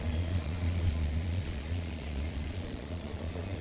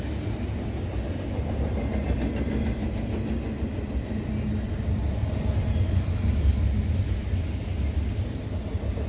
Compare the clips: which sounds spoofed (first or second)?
first